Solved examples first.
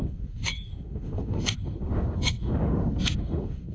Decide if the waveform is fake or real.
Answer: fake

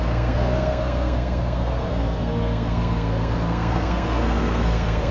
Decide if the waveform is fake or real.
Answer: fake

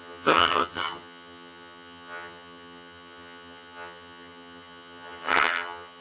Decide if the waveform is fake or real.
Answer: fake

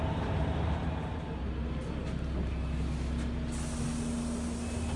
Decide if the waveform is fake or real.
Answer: real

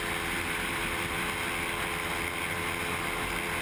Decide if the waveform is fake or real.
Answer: real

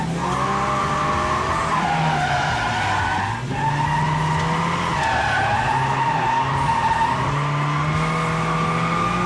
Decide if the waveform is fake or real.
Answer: real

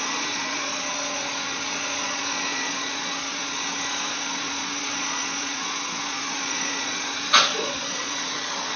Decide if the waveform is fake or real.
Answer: fake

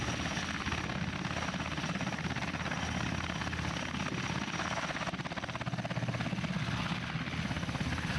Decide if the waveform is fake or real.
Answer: real